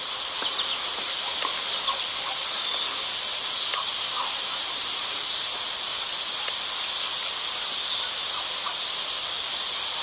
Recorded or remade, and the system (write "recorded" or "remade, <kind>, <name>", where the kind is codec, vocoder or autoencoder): recorded